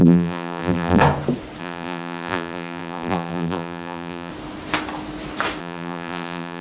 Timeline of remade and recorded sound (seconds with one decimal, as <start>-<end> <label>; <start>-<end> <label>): 0.0-1.0 remade; 1.0-1.6 recorded; 1.6-4.3 remade; 4.3-5.6 recorded; 5.6-6.6 remade